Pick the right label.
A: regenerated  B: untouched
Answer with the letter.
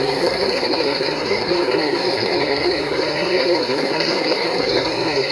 A